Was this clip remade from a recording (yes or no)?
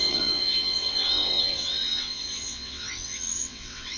yes